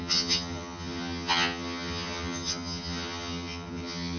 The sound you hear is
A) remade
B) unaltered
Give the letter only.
A